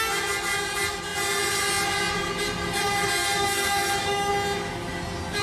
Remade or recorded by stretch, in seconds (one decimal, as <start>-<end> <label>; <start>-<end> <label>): 0.0-3.4 recorded; 3.4-4.3 remade; 4.3-5.4 recorded